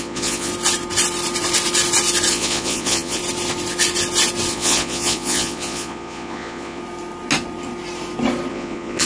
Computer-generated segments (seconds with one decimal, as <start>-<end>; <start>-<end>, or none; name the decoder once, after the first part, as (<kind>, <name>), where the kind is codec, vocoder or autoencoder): 0.0-0.5 (vocoder, Vocos); 2.3-3.2; 4.5-6.8; 8.5-9.1